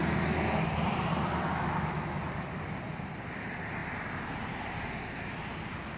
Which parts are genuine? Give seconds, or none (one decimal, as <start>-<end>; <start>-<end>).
0.0-1.5; 2.2-6.0